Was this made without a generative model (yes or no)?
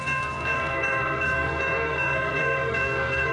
no